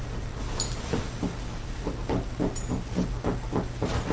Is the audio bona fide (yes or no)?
yes